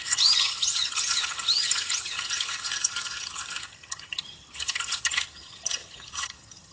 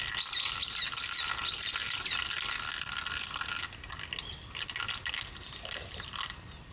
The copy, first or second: first